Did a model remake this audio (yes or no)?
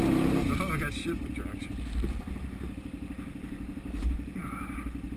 no